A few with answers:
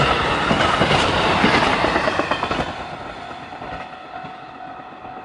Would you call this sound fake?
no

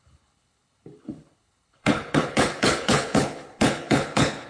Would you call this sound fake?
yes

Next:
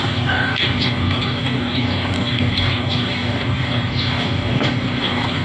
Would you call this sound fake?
yes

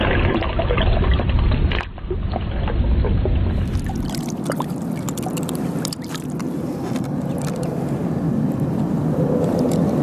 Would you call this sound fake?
no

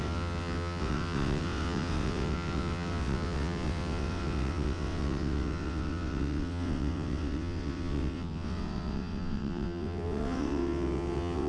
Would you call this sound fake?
yes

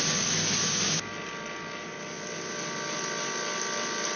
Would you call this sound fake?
no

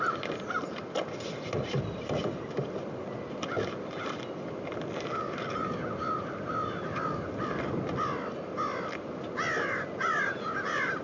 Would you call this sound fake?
no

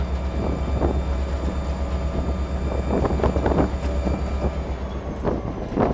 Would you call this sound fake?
no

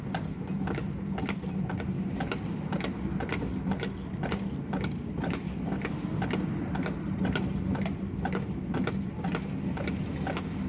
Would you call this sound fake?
no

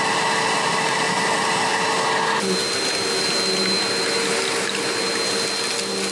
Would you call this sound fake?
no